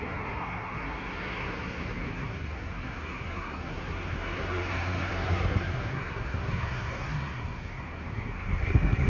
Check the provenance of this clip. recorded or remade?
remade